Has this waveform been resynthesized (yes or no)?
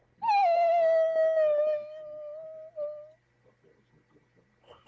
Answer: no